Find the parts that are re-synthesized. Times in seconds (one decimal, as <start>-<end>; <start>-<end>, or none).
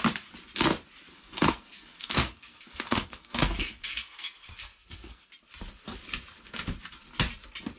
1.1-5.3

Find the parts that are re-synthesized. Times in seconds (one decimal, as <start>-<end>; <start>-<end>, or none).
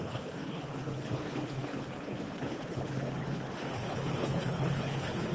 0.0-5.3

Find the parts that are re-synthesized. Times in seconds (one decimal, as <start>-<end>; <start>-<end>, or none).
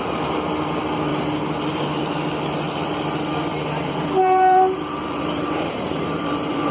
1.1-2.0; 3.5-6.7